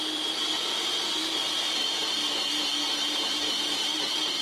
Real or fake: fake